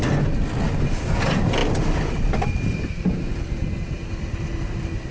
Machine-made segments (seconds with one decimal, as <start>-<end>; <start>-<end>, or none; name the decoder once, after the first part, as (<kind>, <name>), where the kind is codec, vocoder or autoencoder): none